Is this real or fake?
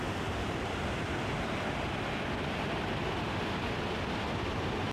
real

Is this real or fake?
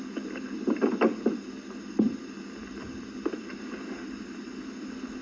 real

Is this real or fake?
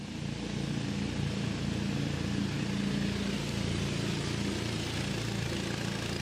real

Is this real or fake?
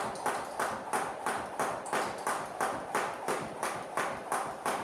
real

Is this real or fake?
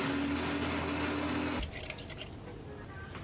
real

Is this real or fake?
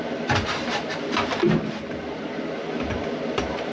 fake